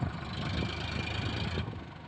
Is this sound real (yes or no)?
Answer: yes